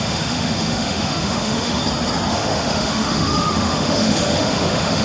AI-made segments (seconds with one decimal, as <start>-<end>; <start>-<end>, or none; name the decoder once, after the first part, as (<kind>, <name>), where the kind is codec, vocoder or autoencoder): 0.0-1.8 (autoencoder, DAC-VAE); 2.3-5.0

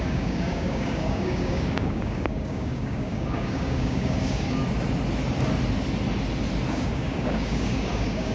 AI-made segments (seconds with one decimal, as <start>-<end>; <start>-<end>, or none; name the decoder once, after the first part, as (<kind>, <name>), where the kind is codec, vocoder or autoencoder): 0.0-4.6 (codec, DAC); 6.7-8.3